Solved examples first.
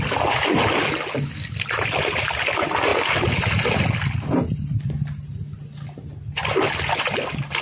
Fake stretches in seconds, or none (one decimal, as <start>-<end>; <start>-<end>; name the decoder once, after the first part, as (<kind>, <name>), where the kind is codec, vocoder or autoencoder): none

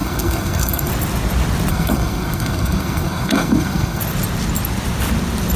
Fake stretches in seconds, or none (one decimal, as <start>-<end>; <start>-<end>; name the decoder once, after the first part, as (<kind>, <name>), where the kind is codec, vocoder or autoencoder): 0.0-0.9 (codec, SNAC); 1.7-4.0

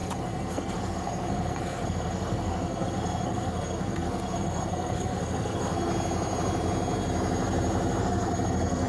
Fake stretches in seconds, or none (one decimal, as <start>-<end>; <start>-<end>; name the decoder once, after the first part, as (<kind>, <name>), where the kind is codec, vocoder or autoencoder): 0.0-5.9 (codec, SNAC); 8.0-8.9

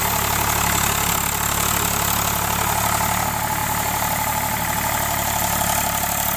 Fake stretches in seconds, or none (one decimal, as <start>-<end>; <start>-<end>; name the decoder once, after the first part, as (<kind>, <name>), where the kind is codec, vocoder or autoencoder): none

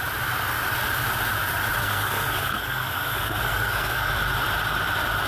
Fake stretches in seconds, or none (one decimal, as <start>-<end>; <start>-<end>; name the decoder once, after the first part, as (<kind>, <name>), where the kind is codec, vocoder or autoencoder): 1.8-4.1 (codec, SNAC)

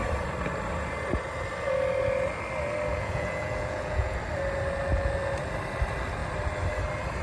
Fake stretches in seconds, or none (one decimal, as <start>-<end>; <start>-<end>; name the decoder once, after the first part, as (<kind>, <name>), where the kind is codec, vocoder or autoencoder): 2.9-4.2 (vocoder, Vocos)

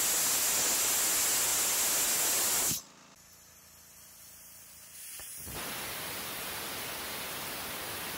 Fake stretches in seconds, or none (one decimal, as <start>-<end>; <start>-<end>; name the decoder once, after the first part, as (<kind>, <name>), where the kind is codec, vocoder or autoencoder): none

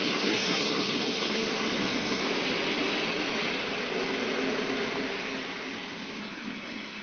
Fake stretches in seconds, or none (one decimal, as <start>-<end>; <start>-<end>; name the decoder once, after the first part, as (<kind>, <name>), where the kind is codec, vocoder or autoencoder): 0.0-2.2 (codec, SNAC); 6.2-7.0